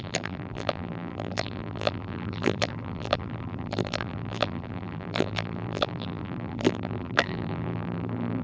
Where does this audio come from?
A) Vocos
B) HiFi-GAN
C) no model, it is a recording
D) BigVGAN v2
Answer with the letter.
D